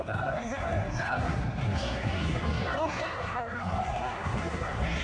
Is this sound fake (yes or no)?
yes